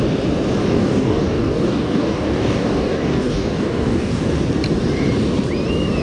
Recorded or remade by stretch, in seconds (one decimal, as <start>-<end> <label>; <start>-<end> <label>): 0.0-0.6 recorded; 0.6-4.2 remade; 4.2-6.0 recorded